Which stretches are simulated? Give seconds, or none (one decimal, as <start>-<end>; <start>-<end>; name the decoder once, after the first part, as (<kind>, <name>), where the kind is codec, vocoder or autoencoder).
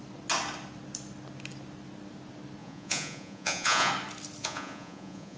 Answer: 2.6-3.9 (vocoder, Vocos); 4.4-5.4